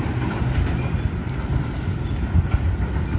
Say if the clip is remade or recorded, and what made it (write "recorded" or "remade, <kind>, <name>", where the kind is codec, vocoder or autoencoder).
recorded